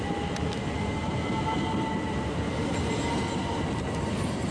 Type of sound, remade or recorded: recorded